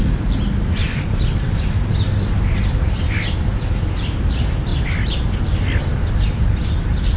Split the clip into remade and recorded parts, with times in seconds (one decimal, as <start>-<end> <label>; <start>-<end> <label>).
0.0-0.8 recorded; 0.8-1.6 remade; 1.6-7.2 recorded